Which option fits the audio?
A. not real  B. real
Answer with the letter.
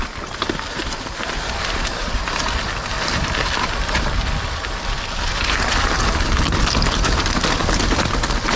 B